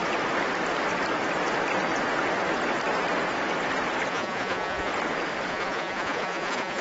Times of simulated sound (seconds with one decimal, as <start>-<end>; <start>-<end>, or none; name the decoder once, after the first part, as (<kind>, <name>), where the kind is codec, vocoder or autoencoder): 4.1-4.9 (vocoder, Vocos); 5.5-6.8